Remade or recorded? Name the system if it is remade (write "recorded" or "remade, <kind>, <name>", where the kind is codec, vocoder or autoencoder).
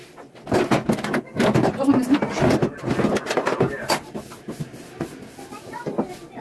recorded